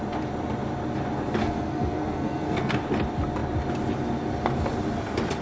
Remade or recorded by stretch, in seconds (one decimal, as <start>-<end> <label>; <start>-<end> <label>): 0.0-1.4 recorded; 1.4-2.7 remade; 2.7-5.4 recorded